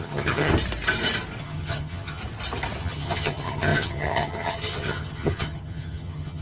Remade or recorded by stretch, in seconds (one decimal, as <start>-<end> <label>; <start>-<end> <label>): 0.0-0.5 remade; 0.5-1.4 recorded; 1.4-2.2 remade; 2.2-2.8 recorded; 2.8-6.4 remade